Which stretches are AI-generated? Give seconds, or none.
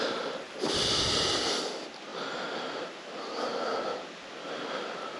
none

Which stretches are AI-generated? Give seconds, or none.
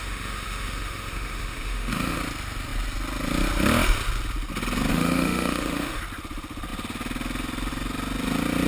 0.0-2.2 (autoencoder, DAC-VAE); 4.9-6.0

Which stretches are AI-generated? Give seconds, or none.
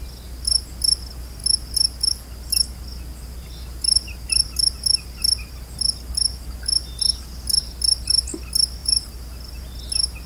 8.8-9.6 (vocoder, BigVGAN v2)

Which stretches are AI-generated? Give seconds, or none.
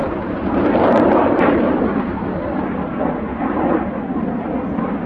0.0-1.7 (vocoder, BigVGAN v2)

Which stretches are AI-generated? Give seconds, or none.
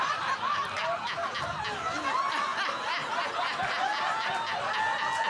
none